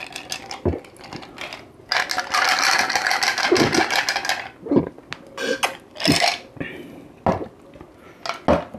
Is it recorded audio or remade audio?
recorded